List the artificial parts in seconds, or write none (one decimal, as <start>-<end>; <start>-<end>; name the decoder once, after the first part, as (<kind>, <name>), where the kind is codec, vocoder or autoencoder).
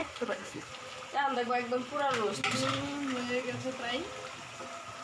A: 0.0-0.7 (codec, SNAC)